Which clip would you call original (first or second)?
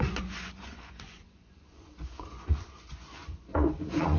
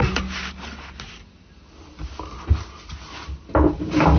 second